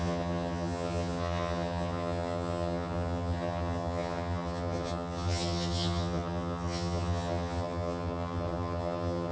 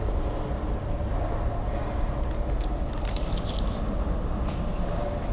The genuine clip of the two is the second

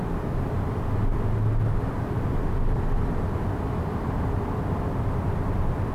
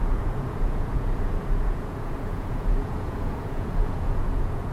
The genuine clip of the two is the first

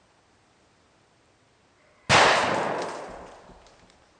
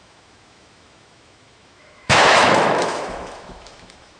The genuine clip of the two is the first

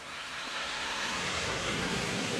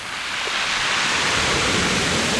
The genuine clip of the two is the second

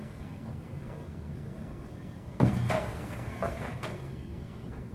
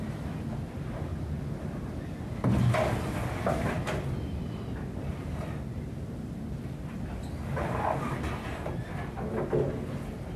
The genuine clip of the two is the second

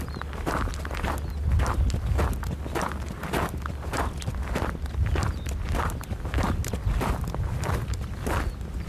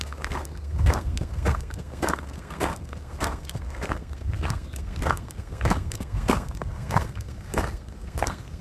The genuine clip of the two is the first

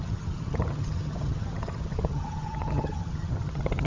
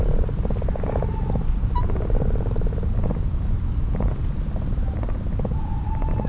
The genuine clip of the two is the second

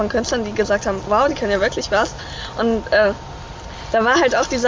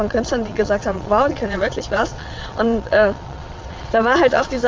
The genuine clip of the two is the first